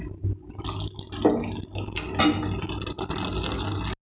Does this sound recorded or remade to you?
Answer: recorded